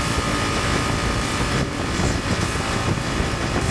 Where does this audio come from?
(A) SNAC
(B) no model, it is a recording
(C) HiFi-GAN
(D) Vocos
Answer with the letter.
B